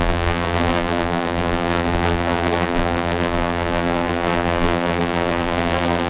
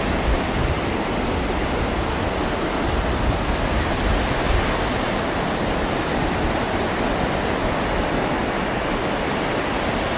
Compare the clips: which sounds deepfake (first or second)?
first